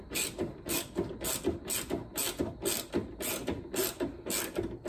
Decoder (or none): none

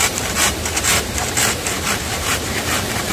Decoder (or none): vocoder, BigVGAN v2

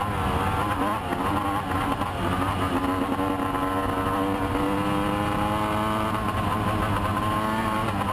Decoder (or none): none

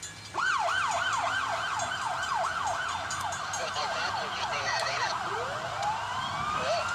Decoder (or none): none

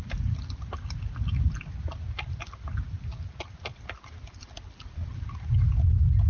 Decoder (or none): none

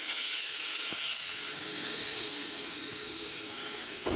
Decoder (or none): codec, SNAC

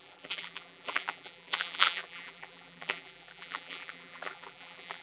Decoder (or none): vocoder, BigVGAN v2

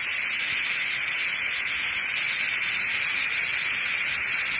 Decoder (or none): none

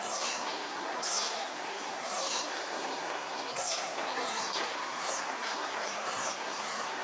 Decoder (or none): codec, SNAC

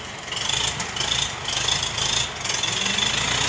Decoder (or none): none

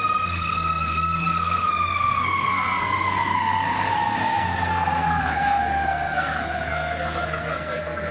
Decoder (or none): codec, SNAC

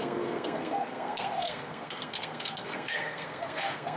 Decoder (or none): codec, SNAC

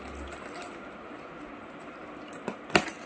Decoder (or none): none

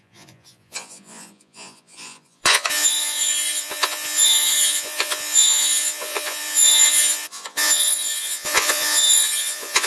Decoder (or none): vocoder, Vocos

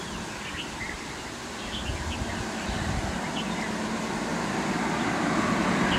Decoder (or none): none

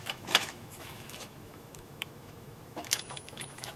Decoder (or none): autoencoder, DAC-VAE